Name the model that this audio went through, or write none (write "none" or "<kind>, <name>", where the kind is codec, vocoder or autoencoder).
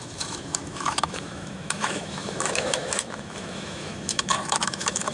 autoencoder, DAC-VAE